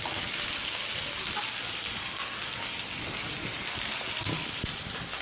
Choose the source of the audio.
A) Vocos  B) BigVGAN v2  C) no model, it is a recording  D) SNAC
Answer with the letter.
C